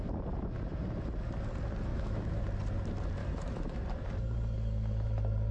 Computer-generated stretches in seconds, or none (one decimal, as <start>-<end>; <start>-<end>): 1.9-2.4; 3.2-3.8

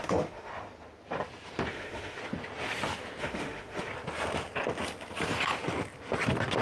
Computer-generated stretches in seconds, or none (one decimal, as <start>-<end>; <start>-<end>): 0.0-0.5; 1.7-2.2; 3.2-3.9